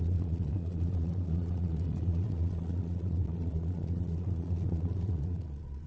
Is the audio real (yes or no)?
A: no